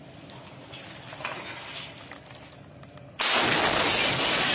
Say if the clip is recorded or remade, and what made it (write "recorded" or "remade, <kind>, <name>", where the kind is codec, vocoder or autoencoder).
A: recorded